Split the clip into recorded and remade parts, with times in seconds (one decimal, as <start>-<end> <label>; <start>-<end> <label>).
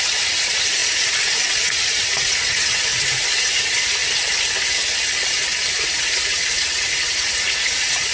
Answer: 0.0-4.0 remade; 4.0-5.7 recorded; 5.7-8.1 remade